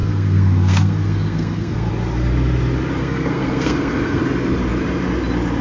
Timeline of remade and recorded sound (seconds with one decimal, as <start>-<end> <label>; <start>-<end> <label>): 0.0-1.9 remade; 1.9-3.0 recorded; 3.0-4.2 remade; 4.2-5.6 recorded